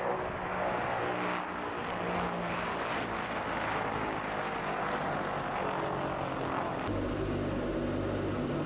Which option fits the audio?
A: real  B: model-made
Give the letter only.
A